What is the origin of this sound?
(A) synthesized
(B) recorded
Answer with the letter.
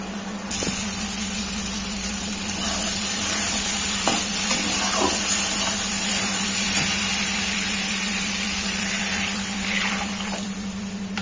B